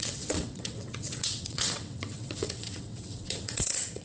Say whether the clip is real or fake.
fake